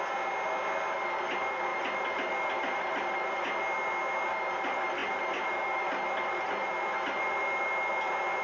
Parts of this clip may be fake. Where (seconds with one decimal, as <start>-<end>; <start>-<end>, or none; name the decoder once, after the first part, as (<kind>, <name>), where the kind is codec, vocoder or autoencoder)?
none